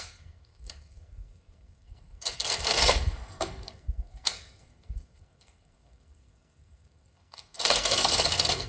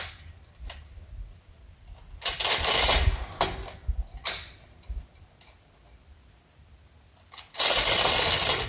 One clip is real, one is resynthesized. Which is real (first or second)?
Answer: second